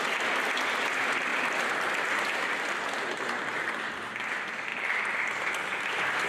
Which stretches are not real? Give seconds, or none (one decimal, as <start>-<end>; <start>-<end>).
4.7-5.5